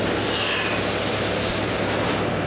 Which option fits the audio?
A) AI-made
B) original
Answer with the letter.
B